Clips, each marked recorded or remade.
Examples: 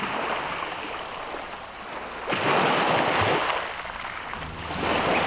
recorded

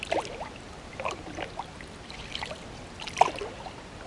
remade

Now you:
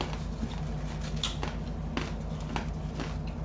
recorded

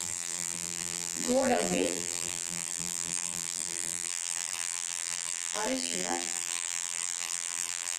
remade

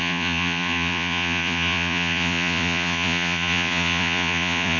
remade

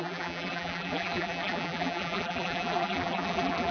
remade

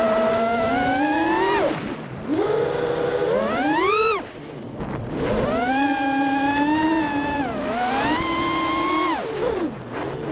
recorded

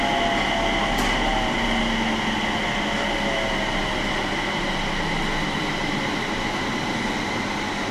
recorded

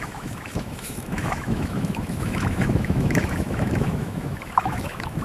remade